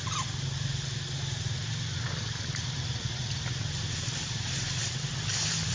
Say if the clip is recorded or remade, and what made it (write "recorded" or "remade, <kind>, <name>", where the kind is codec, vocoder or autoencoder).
remade, vocoder, BigVGAN v2